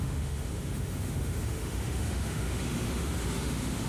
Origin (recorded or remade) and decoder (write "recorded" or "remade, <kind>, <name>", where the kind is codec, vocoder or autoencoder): remade, autoencoder, DAC-VAE